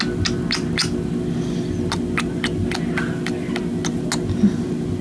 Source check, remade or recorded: recorded